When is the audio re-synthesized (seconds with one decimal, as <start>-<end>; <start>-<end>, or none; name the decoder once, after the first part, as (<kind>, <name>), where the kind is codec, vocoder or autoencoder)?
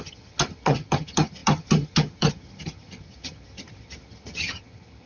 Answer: 0.0-5.1 (vocoder, HiFi-GAN)